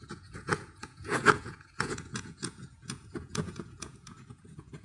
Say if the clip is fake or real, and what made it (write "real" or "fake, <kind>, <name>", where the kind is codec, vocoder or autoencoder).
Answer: fake, vocoder, Vocos